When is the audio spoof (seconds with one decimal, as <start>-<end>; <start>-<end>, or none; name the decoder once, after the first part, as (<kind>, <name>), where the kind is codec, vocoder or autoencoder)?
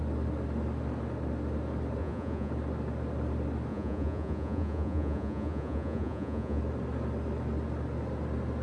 2.0-2.5 (vocoder, Vocos); 3.7-6.6